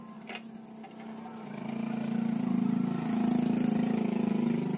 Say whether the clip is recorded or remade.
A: recorded